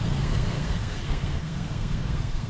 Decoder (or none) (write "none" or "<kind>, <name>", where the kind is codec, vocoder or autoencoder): codec, SNAC